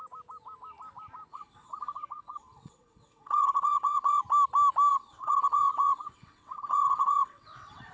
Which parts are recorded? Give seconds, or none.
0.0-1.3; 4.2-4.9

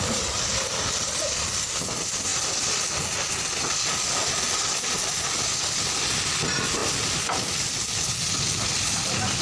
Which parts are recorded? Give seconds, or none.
0.0-9.4

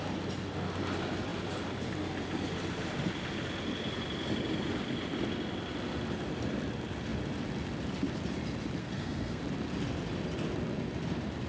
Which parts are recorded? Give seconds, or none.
0.0-8.8; 9.4-11.5

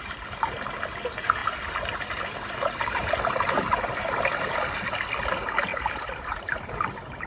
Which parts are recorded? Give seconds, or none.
0.0-5.7; 6.7-7.3